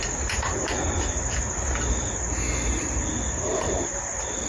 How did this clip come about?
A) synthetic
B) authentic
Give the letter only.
B